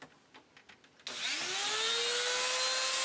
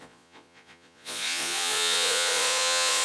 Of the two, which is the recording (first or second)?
first